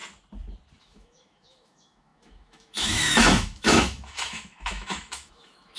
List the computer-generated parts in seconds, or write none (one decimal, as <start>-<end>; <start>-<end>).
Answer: 0.8-5.8

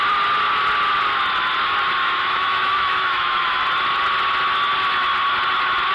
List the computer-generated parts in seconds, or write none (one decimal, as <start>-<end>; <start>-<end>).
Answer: 2.0-3.6

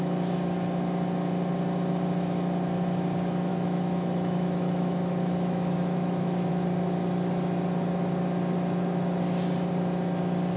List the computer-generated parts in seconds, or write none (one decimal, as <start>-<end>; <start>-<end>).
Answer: 3.5-6.5

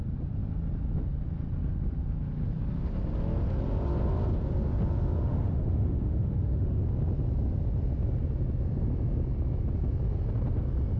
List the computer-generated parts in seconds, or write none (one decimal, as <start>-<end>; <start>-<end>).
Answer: 5.2-6.8

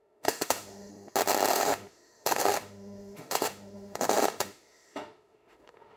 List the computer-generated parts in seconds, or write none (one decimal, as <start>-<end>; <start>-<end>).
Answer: 0.0-0.9; 1.5-6.0

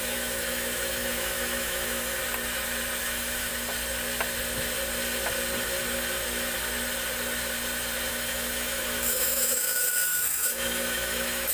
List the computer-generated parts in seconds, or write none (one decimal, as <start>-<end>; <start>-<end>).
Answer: 0.0-2.2; 3.0-3.5; 8.1-11.5

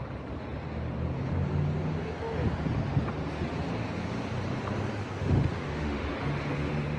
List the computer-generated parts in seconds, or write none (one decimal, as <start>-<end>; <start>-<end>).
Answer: 5.2-6.1